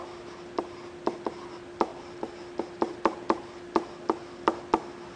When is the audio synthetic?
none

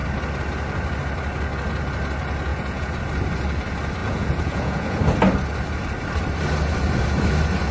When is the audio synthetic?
2.5-3.0 (vocoder, Vocos); 4.0-5.0

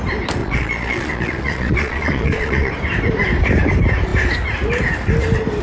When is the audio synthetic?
0.4-2.7 (vocoder, Vocos)

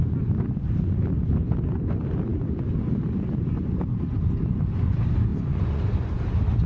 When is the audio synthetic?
5.3-5.9 (vocoder, Vocos)

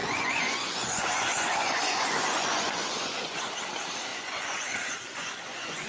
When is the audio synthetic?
0.0-3.5 (vocoder, Vocos); 4.1-5.9

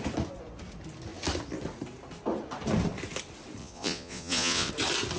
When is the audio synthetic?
3.6-4.7 (vocoder, Vocos)

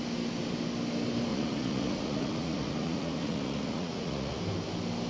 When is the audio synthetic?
1.3-4.4 (vocoder, Vocos)